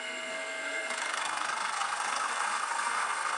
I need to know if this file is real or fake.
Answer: fake